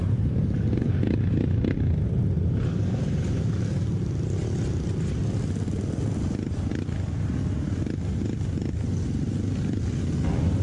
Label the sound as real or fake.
real